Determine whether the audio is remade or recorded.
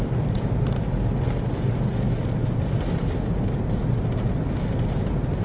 recorded